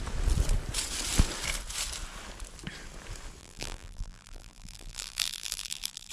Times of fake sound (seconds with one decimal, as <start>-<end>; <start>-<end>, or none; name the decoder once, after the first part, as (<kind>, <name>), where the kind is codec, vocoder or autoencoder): 3.4-6.1 (vocoder, BigVGAN v2)